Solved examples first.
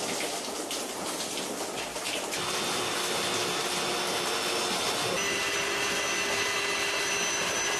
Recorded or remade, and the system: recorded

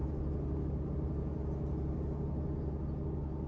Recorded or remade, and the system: recorded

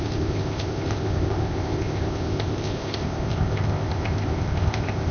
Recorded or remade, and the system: remade, codec, ZipCodec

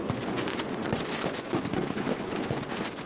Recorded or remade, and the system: remade, vocoder, Vocos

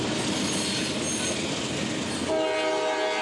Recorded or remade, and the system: recorded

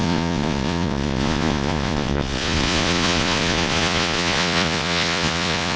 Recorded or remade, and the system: remade, vocoder, Vocos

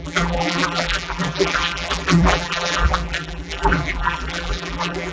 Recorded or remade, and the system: remade, vocoder, BigVGAN v2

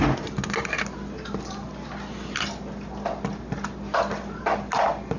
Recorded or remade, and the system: recorded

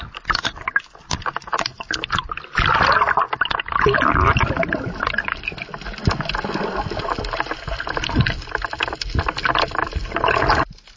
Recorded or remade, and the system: recorded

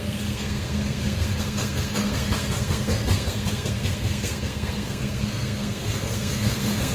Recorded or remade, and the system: remade, codec, SNAC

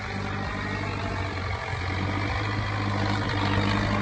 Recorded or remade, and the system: recorded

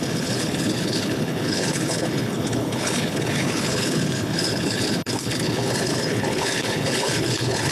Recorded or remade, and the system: remade, codec, HILCodec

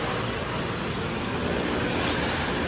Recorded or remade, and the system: recorded